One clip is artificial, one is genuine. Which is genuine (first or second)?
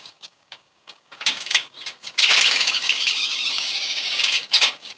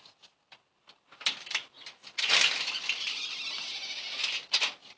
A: second